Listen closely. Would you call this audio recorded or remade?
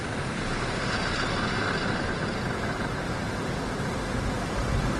recorded